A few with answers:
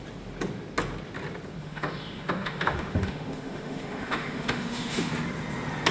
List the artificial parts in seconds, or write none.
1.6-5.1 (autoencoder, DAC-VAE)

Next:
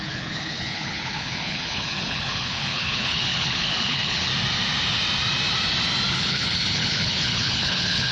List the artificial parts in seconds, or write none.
0.0-4.3 (codec, HILCodec); 6.1-8.1

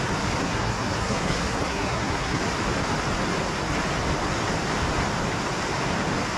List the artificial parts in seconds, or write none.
0.4-2.4 (codec, SNAC)

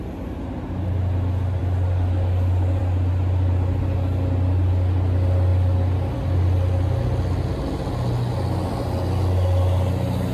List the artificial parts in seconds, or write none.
none

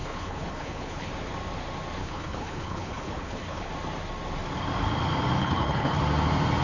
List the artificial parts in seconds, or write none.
0.0-1.1 (codec, HILCodec); 2.0-3.7; 5.4-6.0

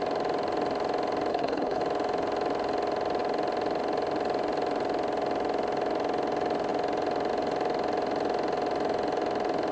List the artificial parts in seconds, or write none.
1.3-1.8 (codec, HILCodec)

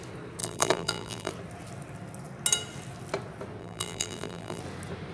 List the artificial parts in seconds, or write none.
0.4-1.3 (vocoder, BigVGAN v2); 3.6-4.6

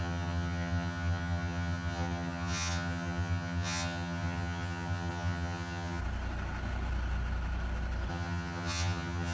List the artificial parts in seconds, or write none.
0.0-6.0 (vocoder, HiFi-GAN); 8.1-9.3